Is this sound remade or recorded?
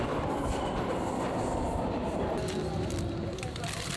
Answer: recorded